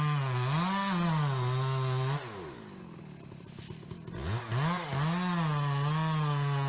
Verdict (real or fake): real